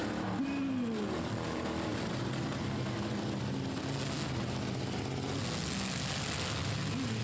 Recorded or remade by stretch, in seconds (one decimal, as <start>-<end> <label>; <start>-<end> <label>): 0.0-7.2 recorded